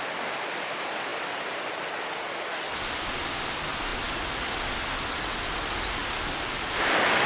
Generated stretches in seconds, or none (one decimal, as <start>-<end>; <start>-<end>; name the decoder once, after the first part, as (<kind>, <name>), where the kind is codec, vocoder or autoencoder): none